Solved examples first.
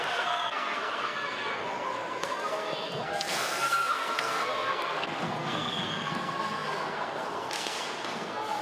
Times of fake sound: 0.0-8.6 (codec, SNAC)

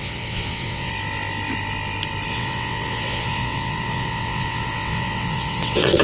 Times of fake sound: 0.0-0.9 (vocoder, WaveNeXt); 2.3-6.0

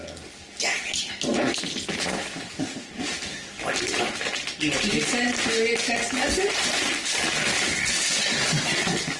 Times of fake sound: none

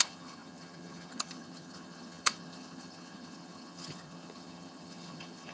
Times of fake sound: 0.0-5.5 (vocoder, HiFi-GAN)